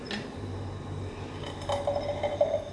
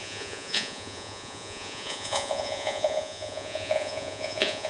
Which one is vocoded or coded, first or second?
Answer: second